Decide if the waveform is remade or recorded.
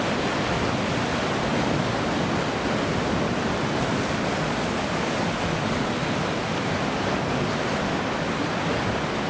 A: recorded